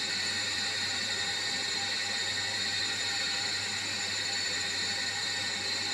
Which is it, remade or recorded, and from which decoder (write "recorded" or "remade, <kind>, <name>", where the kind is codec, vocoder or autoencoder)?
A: remade, vocoder, BigVGAN v2